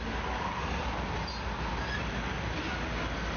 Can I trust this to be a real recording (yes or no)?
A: yes